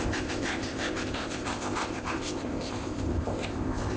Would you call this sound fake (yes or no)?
yes